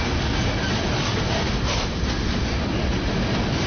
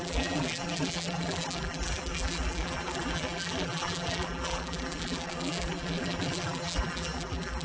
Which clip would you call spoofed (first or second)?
second